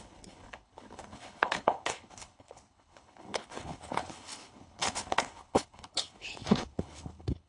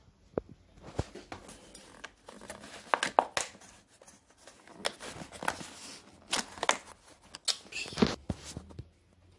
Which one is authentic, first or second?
second